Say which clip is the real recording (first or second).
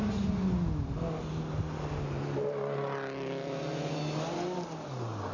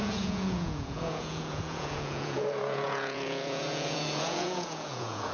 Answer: first